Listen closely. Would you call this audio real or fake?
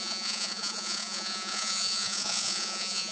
fake